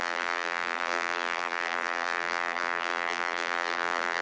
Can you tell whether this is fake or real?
fake